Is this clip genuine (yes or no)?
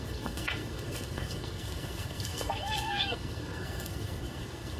no